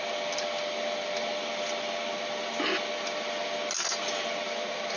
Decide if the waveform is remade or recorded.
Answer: recorded